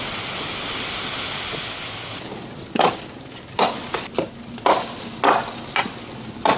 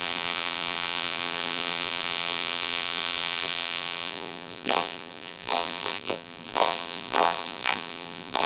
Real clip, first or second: first